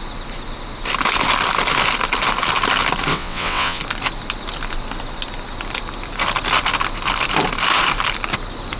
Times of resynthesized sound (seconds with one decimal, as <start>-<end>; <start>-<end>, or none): 3.1-3.8